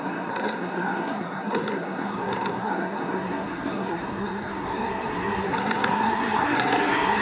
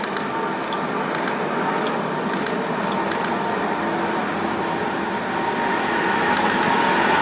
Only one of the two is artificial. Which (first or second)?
first